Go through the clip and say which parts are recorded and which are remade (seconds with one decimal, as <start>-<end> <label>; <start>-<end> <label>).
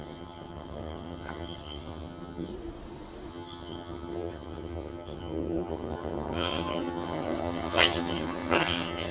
0.0-2.5 remade; 2.5-3.3 recorded; 3.3-9.1 remade